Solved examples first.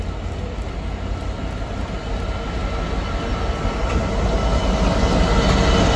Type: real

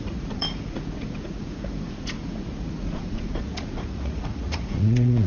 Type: fake